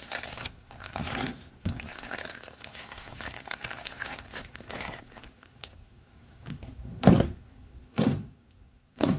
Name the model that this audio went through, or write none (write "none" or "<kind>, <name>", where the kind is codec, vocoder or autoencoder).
codec, SNAC